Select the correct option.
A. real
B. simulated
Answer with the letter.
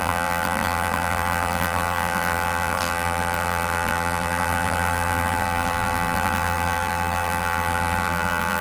B